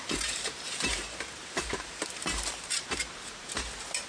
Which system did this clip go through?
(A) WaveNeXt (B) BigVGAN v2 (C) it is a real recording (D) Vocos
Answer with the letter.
B